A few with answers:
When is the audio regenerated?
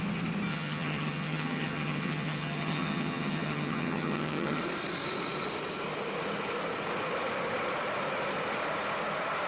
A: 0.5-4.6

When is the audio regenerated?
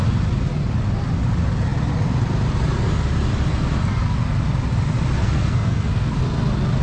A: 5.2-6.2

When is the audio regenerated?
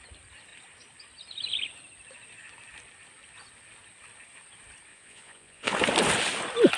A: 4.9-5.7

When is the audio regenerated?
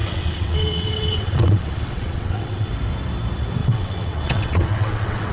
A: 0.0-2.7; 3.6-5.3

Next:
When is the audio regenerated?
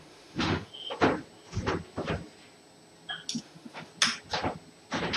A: 0.0-0.7; 3.4-3.9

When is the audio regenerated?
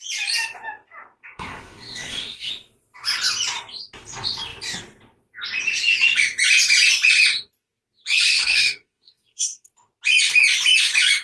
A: 1.2-2.5; 8.4-9.7